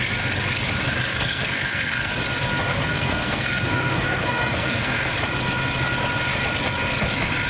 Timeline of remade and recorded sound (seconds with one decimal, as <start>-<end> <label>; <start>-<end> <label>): 0.0-1.1 recorded; 1.1-2.1 remade; 2.1-2.7 recorded; 2.7-5.1 remade; 5.1-7.5 recorded